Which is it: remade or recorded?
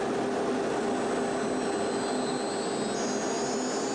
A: recorded